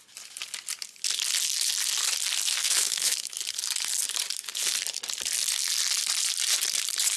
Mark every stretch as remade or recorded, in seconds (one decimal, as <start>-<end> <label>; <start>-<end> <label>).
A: 0.0-2.6 recorded; 2.6-3.4 remade; 3.4-7.2 recorded